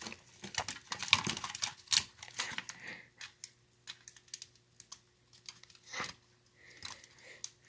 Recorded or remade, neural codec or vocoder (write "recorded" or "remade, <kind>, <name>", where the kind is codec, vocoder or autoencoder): recorded